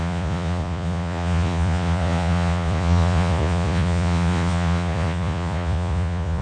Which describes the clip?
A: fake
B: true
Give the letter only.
A